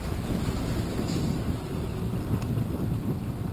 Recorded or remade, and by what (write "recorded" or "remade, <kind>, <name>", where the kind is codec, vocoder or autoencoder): recorded